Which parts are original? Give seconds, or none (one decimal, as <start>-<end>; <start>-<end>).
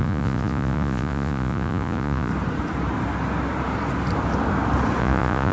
2.3-5.0